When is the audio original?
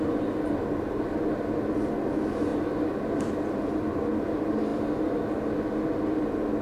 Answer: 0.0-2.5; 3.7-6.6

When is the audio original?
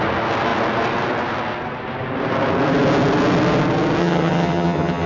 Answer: 0.0-4.0